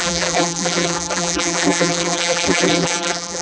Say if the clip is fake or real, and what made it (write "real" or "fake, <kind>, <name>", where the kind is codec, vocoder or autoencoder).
fake, vocoder, BigVGAN v2